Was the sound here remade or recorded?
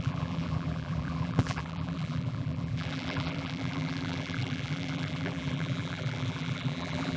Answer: remade